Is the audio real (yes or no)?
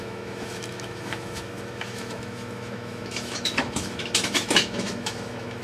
no